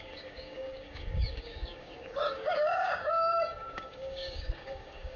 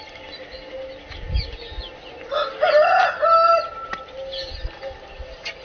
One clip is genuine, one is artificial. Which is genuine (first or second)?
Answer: second